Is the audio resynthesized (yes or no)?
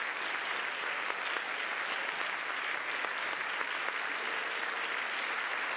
no